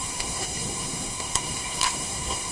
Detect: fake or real fake